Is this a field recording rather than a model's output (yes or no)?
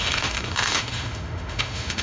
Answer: no